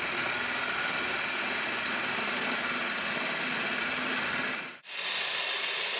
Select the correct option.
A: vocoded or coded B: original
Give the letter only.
B